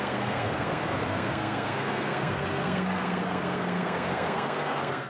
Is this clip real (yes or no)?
no